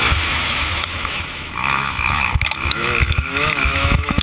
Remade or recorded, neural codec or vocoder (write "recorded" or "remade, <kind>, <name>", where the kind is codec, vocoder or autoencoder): remade, autoencoder, DAC-VAE